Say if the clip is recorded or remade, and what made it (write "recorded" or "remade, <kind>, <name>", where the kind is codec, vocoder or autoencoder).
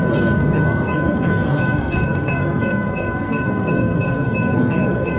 remade, codec, SNAC